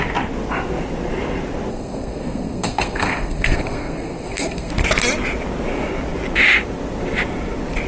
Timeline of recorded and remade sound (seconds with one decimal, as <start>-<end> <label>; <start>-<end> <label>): 0.0-1.7 recorded; 1.7-4.7 remade; 4.7-7.9 recorded

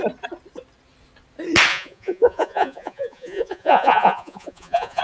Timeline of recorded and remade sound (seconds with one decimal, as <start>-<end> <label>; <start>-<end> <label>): 0.0-1.7 recorded; 1.7-5.0 remade

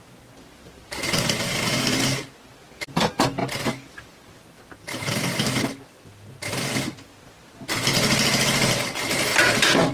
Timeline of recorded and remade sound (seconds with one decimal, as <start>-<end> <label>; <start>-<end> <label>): 0.0-9.9 recorded